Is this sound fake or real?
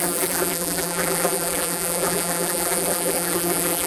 fake